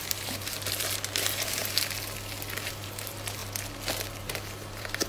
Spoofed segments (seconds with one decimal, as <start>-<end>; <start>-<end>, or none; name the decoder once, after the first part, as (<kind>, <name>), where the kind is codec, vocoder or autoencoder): 0.0-1.6 (vocoder, BigVGAN v2); 2.7-3.4; 4.2-5.1

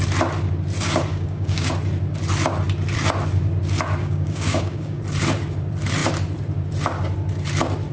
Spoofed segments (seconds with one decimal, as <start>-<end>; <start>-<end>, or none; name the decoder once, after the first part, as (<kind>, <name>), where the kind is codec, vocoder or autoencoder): 1.1-1.7 (codec, DAC); 4.0-5.0

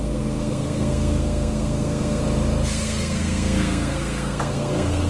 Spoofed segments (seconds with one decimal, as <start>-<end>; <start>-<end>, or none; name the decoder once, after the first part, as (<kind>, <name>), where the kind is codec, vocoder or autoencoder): 0.0-2.2 (codec, SNAC); 2.7-5.1

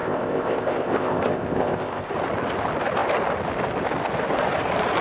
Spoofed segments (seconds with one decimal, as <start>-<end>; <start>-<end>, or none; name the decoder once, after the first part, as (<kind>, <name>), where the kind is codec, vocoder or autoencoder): 0.0-2.1 (codec, ZipCodec)

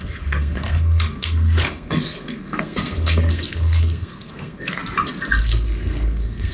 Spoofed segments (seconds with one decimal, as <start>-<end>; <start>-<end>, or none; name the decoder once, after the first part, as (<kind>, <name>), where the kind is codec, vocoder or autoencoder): 0.0-4.8 (codec, SNAC); 5.4-6.5

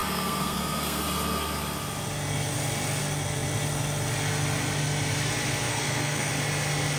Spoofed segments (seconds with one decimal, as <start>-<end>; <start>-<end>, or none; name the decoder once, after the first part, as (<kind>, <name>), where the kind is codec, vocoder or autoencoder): 0.0-1.0 (codec, SNAC); 5.7-6.3